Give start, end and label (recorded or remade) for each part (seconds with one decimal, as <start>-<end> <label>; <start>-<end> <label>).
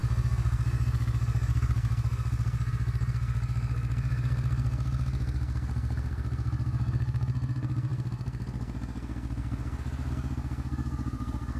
0.0-11.6 remade